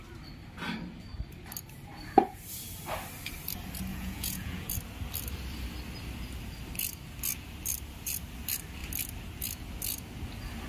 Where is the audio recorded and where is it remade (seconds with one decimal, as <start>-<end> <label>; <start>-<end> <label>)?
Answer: 0.0-3.9 recorded; 3.9-4.7 remade; 4.7-10.7 recorded